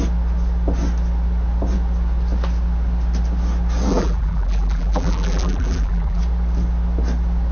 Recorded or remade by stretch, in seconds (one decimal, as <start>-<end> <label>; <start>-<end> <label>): 0.0-3.9 recorded; 3.9-6.2 remade; 6.2-7.5 recorded